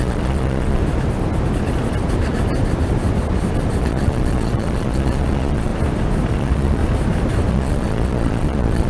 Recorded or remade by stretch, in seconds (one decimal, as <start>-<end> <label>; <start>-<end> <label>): 0.0-0.8 remade; 0.8-3.8 recorded; 3.8-5.7 remade; 5.7-6.3 recorded; 6.3-6.8 remade; 6.8-7.5 recorded; 7.5-8.9 remade